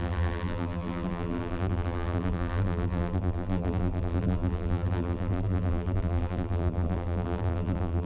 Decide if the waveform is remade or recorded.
remade